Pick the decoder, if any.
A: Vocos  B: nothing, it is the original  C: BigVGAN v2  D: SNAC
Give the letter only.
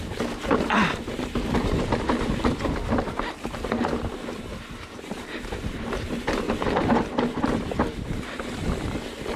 C